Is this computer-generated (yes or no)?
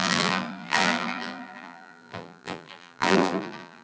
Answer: yes